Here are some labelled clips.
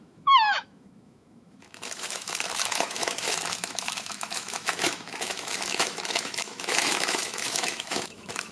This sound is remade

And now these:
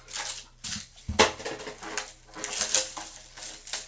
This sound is recorded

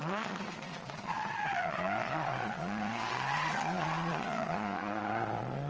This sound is remade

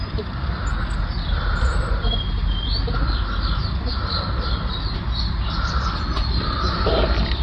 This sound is recorded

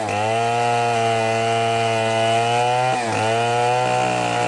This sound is recorded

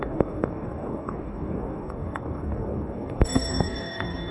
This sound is remade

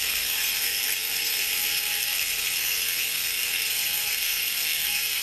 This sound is remade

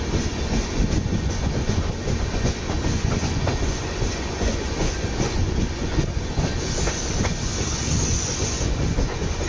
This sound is remade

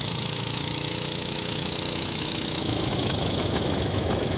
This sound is remade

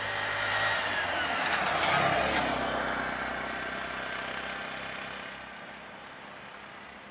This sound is recorded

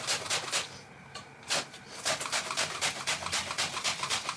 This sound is recorded